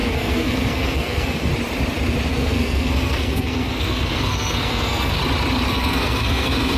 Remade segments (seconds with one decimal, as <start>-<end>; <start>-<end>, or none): 0.0-1.5; 2.3-5.2; 5.7-6.8